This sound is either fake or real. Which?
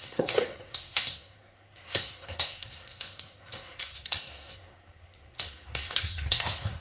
fake